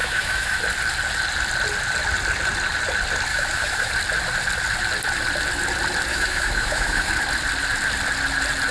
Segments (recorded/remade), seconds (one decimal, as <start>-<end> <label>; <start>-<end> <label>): 0.0-0.6 remade; 0.6-3.3 recorded; 3.3-3.9 remade; 3.9-6.1 recorded; 6.1-7.1 remade; 7.1-8.7 recorded

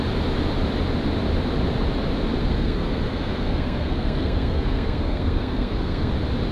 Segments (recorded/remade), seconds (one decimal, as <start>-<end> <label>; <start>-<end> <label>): 0.0-2.4 recorded; 2.4-6.1 remade; 6.1-6.5 recorded

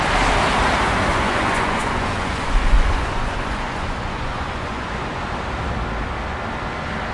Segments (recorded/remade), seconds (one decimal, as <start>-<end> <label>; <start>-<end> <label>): 0.0-1.1 recorded; 1.1-5.2 remade; 5.2-7.1 recorded